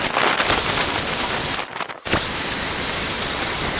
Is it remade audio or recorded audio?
recorded